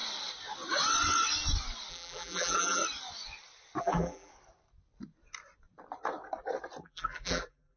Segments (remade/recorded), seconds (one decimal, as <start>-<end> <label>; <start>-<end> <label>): 0.0-1.9 recorded; 1.9-2.8 remade; 2.8-3.8 recorded; 3.8-4.3 remade; 4.3-6.8 recorded; 6.8-7.8 remade